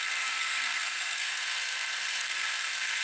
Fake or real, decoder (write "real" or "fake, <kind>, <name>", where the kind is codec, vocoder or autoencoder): fake, codec, SNAC